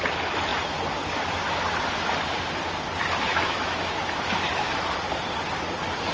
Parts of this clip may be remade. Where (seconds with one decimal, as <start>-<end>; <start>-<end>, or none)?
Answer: 3.3-4.7